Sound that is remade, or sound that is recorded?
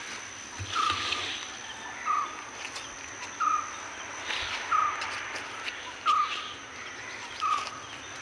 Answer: recorded